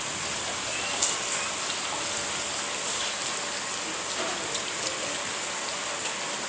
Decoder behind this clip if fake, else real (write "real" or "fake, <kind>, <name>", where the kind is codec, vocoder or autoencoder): real